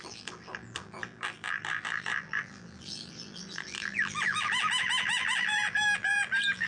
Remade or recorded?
remade